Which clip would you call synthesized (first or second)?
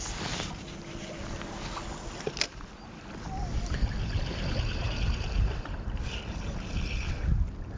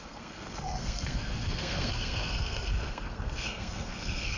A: second